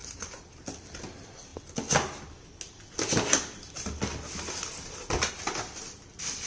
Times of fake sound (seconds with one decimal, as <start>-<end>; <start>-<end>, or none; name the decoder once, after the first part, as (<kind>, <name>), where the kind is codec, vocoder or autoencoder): none